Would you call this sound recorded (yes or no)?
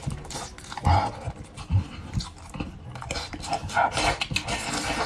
yes